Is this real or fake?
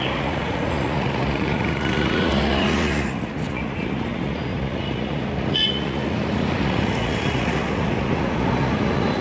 fake